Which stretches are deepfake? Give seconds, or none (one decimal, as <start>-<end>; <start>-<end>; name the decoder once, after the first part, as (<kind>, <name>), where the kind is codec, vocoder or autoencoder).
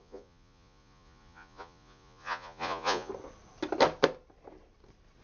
0.0-3.1 (vocoder, Vocos)